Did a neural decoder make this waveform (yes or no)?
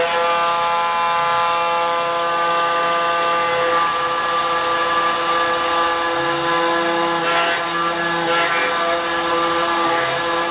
no